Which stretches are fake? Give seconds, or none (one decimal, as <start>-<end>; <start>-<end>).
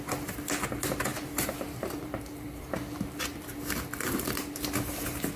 1.1-4.2